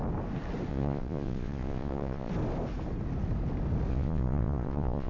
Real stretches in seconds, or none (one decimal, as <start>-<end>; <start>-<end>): 0.0-0.7; 2.3-3.9